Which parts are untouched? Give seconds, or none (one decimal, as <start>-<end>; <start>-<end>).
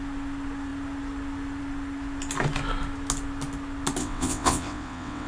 0.0-4.0